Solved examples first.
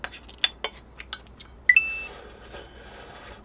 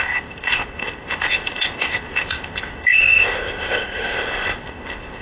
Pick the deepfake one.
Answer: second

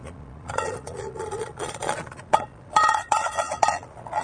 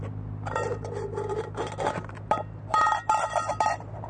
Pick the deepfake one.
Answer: first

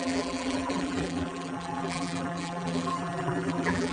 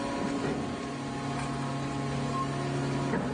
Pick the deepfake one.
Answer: first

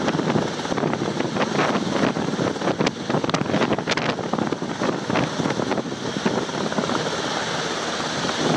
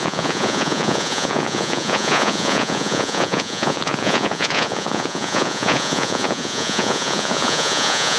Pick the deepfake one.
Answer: second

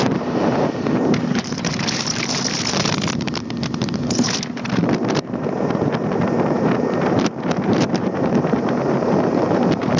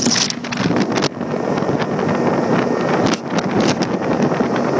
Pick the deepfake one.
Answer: first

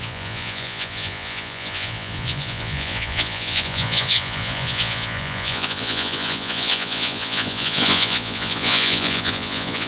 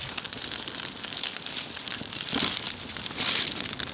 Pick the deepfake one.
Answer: first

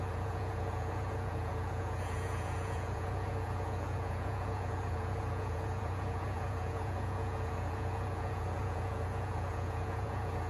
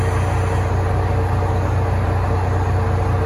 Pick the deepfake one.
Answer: first